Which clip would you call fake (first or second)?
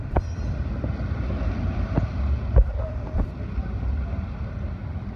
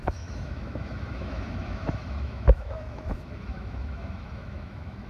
second